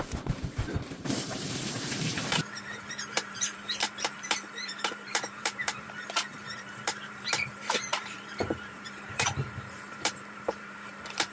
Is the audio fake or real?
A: fake